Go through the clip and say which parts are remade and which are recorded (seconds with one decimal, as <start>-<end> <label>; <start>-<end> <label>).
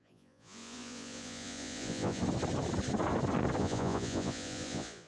0.0-2.2 remade; 2.2-3.6 recorded; 3.6-5.1 remade